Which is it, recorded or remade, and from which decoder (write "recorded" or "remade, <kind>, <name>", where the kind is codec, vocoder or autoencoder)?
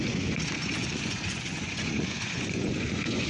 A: remade, vocoder, Vocos